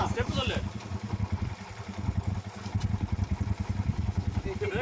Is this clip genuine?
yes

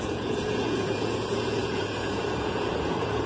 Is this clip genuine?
no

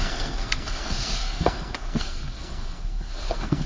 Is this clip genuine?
no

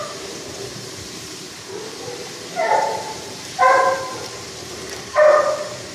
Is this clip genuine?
no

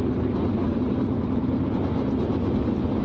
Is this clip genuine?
yes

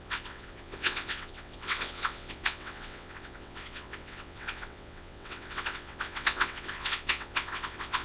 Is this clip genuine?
no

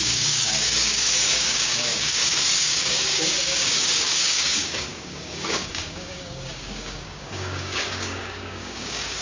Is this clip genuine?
no